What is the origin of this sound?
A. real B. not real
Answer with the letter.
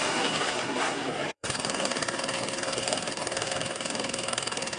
B